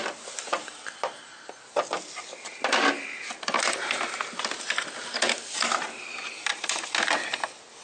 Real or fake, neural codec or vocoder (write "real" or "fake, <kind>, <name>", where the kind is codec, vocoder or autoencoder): real